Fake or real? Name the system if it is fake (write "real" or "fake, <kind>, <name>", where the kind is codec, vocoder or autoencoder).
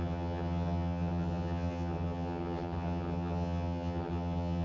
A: fake, vocoder, HiFi-GAN